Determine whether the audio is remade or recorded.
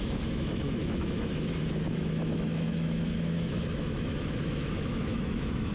remade